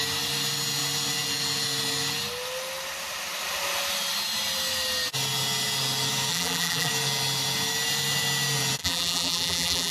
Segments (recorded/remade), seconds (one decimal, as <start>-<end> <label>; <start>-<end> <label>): 0.0-6.3 recorded; 6.3-6.9 remade; 6.9-8.8 recorded; 8.8-9.9 remade